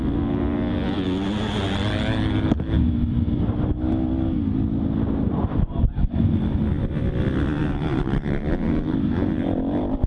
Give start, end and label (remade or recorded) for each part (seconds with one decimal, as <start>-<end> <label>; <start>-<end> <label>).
0.0-7.6 recorded; 7.6-8.8 remade; 8.8-10.1 recorded